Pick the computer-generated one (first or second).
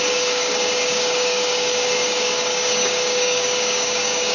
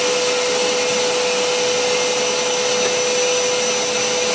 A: first